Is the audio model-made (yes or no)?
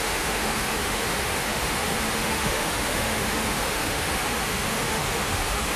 yes